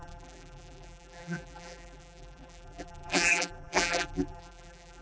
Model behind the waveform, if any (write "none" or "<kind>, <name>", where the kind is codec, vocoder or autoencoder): vocoder, BigVGAN v2